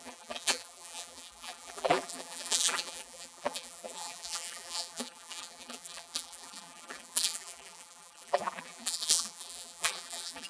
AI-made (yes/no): yes